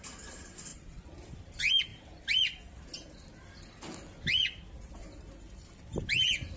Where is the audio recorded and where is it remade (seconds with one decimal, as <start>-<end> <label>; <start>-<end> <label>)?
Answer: 0.0-0.7 recorded; 0.7-1.3 remade; 1.3-6.6 recorded

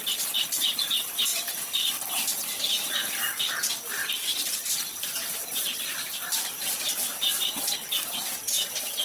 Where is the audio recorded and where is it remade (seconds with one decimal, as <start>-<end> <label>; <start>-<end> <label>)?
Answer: 0.0-1.3 recorded; 1.3-1.9 remade; 1.9-4.0 recorded; 4.0-7.5 remade; 7.5-9.0 recorded

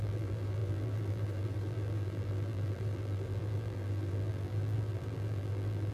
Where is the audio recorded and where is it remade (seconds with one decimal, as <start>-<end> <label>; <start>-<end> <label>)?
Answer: 0.0-5.9 remade

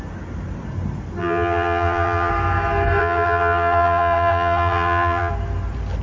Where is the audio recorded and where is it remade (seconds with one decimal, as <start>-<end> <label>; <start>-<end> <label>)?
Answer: 0.0-1.2 recorded; 1.2-2.3 remade; 2.3-3.0 recorded; 3.0-5.3 remade; 5.3-6.0 recorded

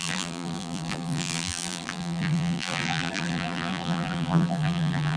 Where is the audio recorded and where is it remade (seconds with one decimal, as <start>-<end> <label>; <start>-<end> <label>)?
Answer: 0.0-5.2 remade

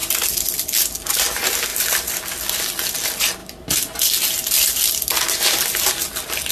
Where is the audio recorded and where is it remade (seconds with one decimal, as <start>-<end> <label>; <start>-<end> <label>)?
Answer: 0.0-6.5 recorded

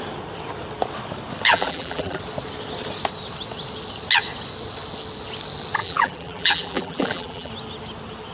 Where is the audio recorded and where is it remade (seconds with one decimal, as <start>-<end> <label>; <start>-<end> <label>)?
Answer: 0.0-1.5 recorded; 1.5-2.2 remade; 2.2-5.8 recorded; 5.8-7.5 remade; 7.5-8.3 recorded